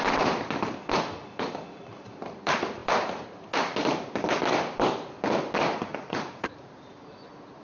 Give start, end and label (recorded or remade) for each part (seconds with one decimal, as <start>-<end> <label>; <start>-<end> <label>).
0.0-5.9 recorded; 5.9-6.5 remade; 6.5-7.6 recorded

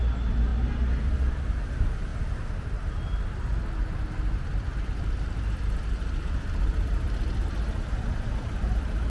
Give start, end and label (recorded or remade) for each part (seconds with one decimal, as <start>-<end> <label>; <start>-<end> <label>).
0.0-9.1 recorded

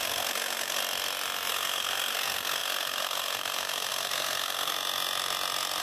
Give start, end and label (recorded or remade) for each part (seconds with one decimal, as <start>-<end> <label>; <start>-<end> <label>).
0.0-0.8 remade; 0.8-1.5 recorded; 1.5-4.7 remade; 4.7-5.8 recorded

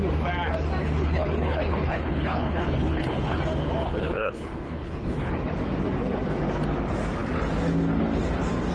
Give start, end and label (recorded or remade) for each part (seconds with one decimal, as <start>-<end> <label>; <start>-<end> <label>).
0.0-0.8 recorded; 0.8-3.4 remade; 3.4-3.8 recorded; 3.8-5.3 remade; 5.3-8.7 recorded